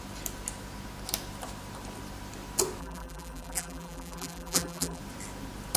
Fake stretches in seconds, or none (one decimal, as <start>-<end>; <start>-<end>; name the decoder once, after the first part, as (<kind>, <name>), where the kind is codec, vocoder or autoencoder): 2.8-5.0 (vocoder, BigVGAN v2)